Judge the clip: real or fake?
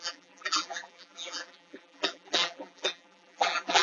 fake